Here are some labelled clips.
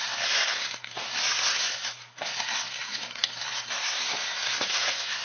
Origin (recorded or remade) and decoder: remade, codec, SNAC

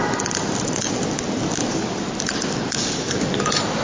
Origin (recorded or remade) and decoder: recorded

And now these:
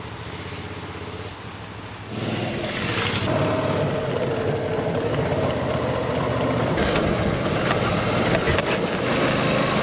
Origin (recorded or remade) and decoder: recorded